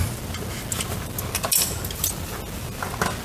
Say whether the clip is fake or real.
real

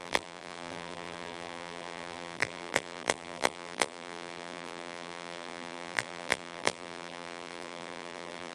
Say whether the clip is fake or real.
fake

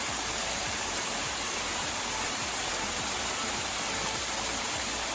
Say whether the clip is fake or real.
fake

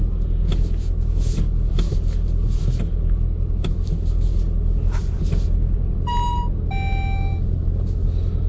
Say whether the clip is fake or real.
real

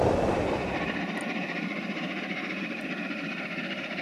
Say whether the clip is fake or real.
fake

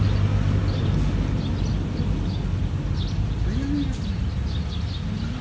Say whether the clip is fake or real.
real